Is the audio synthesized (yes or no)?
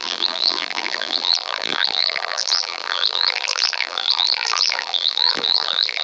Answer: yes